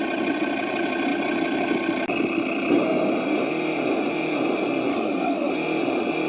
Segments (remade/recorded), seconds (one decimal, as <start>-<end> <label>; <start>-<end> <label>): 0.0-4.9 recorded; 4.9-5.5 remade; 5.5-6.3 recorded